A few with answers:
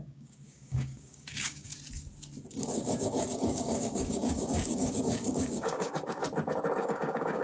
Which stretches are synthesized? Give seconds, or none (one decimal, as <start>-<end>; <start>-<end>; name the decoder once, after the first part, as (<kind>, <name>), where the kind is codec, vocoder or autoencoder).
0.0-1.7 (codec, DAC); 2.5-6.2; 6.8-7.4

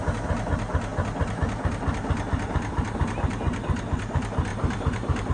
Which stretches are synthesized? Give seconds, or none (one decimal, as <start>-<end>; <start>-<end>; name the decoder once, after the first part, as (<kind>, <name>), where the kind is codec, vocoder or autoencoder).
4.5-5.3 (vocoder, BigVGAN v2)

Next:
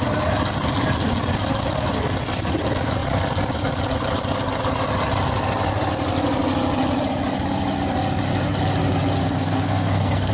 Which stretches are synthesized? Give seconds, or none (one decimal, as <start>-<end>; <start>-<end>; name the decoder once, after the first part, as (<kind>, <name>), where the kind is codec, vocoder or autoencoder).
9.2-10.3 (codec, SNAC)